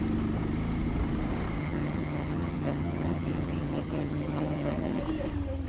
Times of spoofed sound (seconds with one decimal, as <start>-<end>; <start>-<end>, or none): 1.6-5.0